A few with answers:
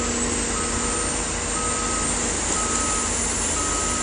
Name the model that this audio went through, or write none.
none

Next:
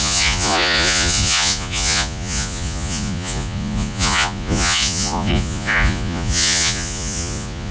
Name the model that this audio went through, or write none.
vocoder, Vocos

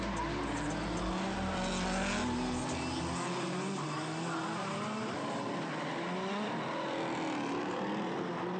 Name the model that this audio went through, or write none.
none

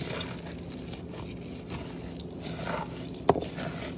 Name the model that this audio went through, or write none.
none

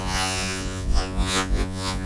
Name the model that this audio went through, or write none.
vocoder, Vocos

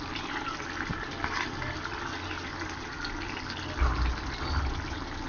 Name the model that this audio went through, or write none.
none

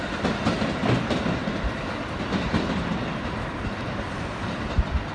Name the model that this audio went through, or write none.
none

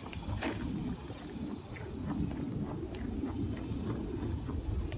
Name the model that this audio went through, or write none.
none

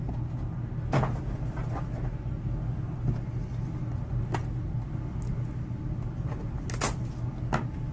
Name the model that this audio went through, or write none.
none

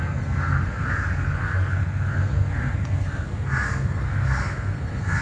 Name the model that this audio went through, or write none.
codec, SNAC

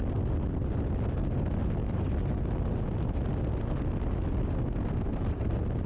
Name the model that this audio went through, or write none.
none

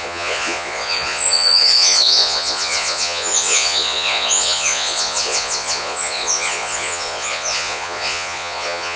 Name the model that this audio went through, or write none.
vocoder, Vocos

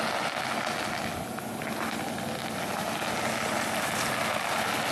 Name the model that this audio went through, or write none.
none